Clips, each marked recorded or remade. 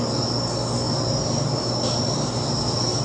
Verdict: recorded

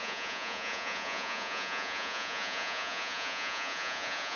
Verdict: remade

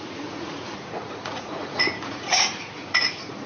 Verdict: remade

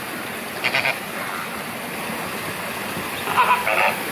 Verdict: recorded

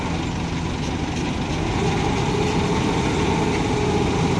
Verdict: recorded